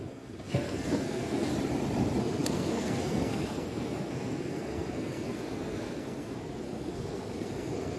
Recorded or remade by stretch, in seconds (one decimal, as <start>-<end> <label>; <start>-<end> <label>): 0.0-1.5 remade; 1.5-2.2 recorded; 2.2-8.0 remade